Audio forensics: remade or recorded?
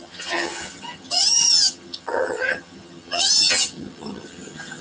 remade